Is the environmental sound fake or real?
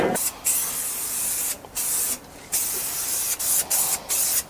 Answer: real